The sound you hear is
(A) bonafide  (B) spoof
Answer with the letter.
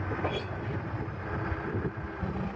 B